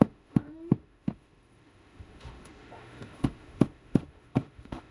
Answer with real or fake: fake